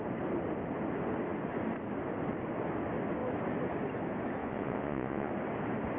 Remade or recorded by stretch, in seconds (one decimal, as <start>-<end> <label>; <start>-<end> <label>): 0.0-4.4 recorded; 4.4-5.3 remade; 5.3-6.0 recorded